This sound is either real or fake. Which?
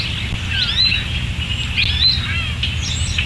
real